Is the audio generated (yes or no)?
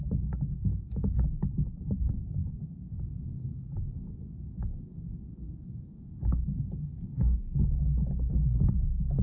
yes